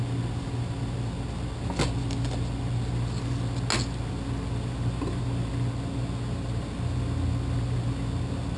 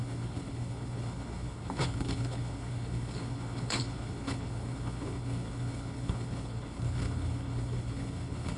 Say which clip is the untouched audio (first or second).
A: first